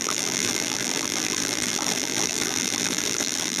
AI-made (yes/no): yes